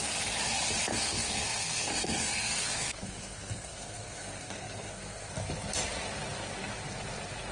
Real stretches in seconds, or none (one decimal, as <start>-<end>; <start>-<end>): 0.0-0.9; 5.3-7.5